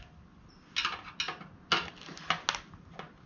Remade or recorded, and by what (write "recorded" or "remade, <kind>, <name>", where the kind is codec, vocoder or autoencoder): recorded